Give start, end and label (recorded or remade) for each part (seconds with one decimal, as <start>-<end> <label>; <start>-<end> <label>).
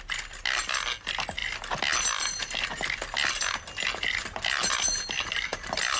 0.0-6.0 recorded